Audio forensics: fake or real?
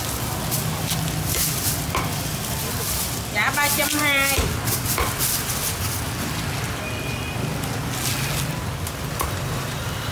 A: real